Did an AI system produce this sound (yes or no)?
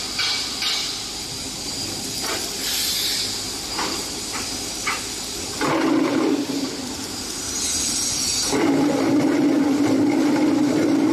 no